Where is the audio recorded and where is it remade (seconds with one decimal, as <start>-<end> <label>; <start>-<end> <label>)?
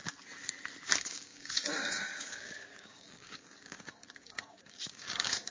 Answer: 0.0-0.9 recorded; 0.9-5.5 remade